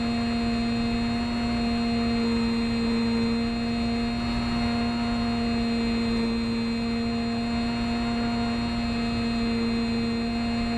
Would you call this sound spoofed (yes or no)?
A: no